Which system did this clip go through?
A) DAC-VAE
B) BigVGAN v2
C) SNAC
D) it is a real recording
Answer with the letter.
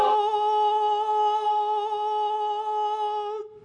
D